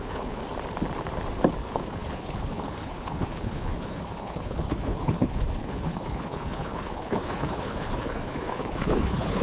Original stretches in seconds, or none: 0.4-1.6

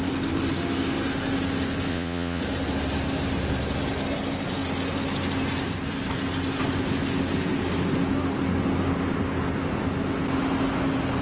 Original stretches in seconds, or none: 0.0-1.9; 2.4-11.2

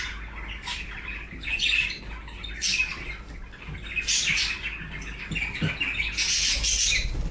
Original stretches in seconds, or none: 0.0-0.7; 2.0-2.7; 3.8-7.3

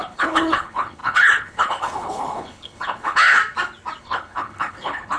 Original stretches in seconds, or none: 3.4-4.0

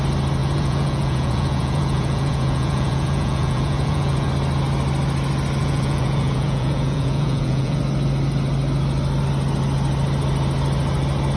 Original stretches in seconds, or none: 0.0-0.4; 4.3-5.6; 7.8-11.4

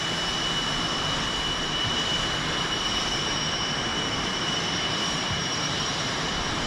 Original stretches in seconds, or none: 0.0-3.9

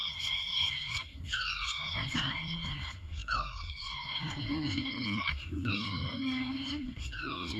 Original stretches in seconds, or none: none